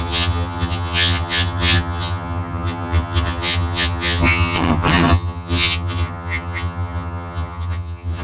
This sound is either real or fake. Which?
fake